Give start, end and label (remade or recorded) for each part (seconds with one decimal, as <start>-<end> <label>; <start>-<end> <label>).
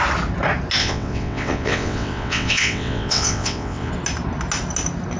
0.0-0.8 recorded; 0.8-3.9 remade; 3.9-5.2 recorded